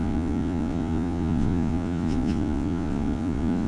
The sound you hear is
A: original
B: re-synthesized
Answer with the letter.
B